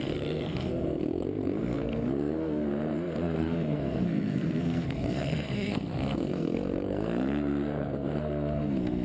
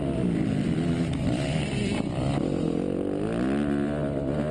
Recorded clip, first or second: second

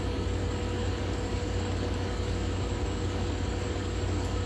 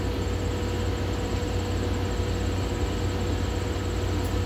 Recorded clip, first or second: second